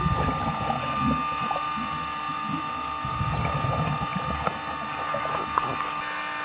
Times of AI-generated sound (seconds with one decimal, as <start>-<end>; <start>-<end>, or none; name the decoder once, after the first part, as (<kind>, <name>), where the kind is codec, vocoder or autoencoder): none